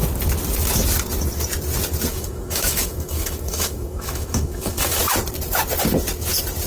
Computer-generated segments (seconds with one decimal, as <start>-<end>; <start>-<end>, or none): 2.1-5.0